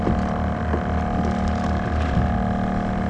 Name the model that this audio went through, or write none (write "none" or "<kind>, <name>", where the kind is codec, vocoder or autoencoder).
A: none